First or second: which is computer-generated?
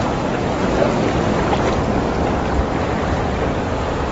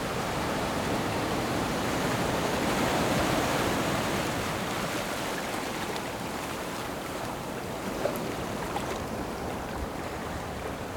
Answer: second